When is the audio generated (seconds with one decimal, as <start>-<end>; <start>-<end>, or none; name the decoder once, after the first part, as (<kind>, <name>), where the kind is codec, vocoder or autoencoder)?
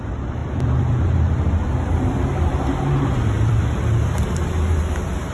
0.4-3.6 (vocoder, BigVGAN v2)